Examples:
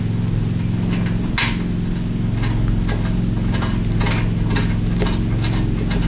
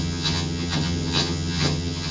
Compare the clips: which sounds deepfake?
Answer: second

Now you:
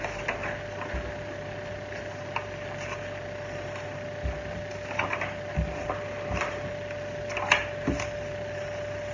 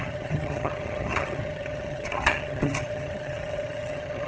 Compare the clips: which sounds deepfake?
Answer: second